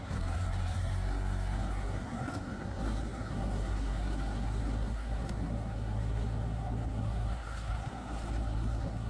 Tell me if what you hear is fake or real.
fake